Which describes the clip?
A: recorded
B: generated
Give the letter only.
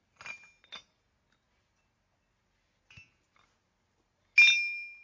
A